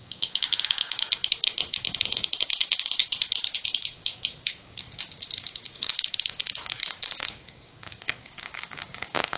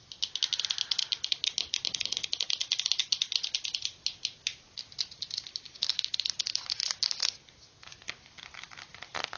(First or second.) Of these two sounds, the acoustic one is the second